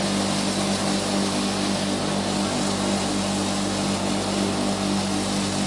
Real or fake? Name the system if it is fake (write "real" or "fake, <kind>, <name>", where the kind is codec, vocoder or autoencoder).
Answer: real